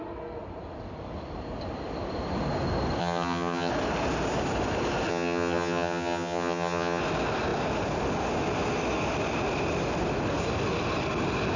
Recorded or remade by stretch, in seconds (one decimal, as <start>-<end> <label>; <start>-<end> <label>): 0.0-3.0 recorded; 3.0-3.7 remade; 3.7-5.1 recorded; 5.1-7.0 remade; 7.0-11.6 recorded